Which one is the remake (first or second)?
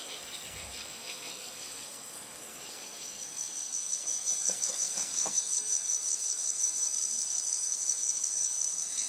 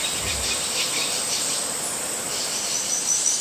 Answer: first